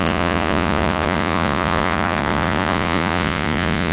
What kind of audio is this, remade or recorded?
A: remade